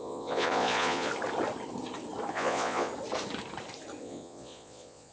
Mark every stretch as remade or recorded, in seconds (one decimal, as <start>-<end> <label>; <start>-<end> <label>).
0.0-1.1 remade; 1.1-2.3 recorded; 2.3-2.9 remade; 2.9-4.0 recorded; 4.0-5.1 remade